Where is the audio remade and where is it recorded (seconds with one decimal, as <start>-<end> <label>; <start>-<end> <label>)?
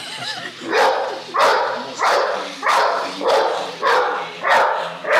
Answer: 0.0-1.5 recorded; 1.5-4.4 remade; 4.4-5.2 recorded